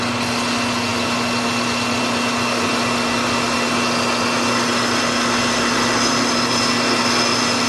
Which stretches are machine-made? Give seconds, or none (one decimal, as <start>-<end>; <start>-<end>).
none

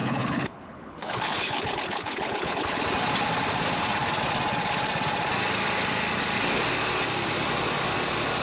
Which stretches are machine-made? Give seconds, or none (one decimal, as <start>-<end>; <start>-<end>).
0.0-2.8

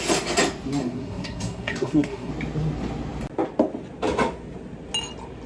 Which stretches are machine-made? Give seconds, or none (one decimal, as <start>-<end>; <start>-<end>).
0.8-2.3

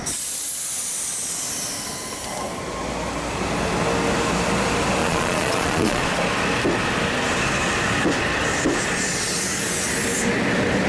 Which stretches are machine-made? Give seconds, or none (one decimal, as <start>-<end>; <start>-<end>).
5.0-6.0

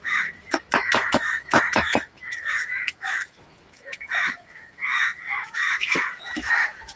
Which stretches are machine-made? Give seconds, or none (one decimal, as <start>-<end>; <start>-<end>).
0.0-7.0

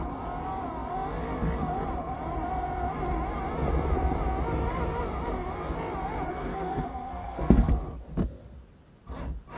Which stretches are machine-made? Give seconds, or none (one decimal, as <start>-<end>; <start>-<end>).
6.3-7.7

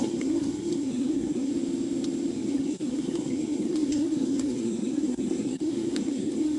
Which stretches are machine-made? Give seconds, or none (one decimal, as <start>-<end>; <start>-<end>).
0.0-1.5; 2.3-6.6

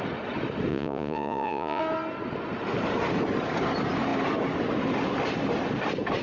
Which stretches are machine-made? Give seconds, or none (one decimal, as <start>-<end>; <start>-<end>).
0.7-1.8